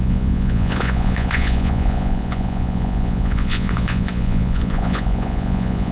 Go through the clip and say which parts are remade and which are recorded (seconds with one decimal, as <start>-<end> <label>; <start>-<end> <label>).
0.0-5.9 remade